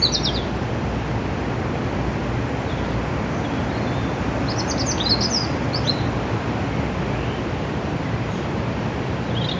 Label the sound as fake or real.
real